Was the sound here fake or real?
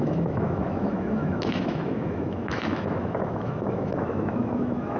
fake